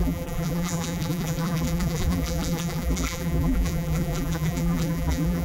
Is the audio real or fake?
fake